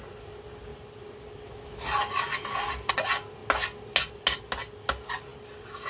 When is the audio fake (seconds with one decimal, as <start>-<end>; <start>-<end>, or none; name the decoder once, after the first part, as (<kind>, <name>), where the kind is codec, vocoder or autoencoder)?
none